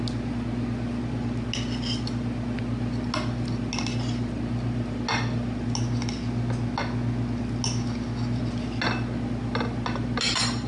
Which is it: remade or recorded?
recorded